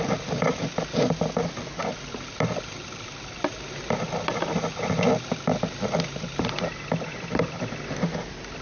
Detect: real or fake real